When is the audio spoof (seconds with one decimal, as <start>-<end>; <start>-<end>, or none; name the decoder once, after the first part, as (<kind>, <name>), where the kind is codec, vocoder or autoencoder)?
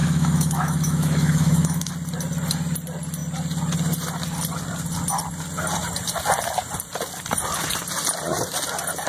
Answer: 0.0-1.9 (autoencoder, DAC-VAE)